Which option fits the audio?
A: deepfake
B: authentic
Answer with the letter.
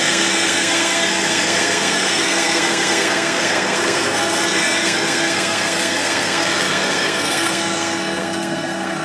A